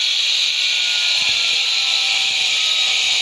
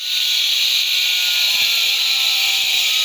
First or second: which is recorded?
second